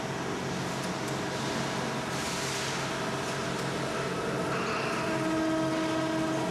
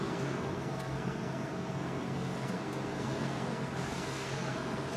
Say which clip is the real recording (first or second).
first